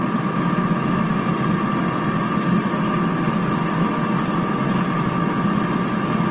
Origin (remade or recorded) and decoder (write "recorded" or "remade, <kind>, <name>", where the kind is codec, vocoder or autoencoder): recorded